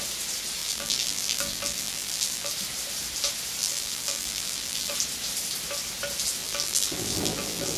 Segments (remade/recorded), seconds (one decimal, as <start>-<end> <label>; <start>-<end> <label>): 0.0-0.6 recorded; 0.6-2.5 remade; 2.5-3.6 recorded; 3.6-4.9 remade; 4.9-6.4 recorded; 6.4-7.8 remade